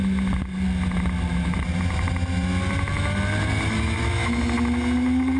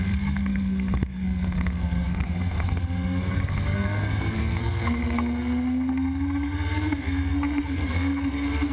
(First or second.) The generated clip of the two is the second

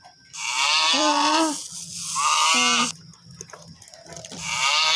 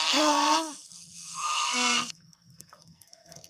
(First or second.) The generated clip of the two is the second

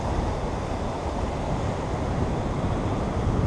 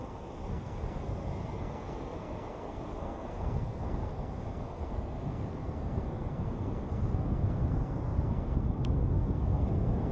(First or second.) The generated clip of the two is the second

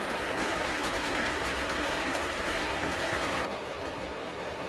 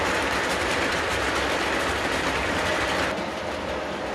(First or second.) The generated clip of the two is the first